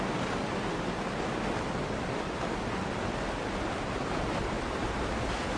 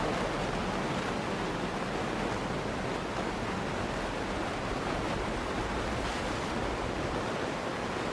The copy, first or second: first